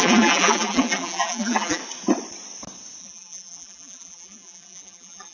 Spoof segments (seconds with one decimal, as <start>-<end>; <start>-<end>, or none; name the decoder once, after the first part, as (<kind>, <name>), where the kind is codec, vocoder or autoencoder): 0.0-1.8 (vocoder, BigVGAN v2); 3.0-5.3